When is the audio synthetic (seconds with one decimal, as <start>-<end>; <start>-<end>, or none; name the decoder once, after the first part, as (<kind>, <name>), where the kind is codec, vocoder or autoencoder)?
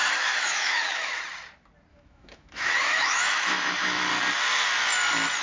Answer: 0.0-1.2 (autoencoder, DAC-VAE); 1.9-4.1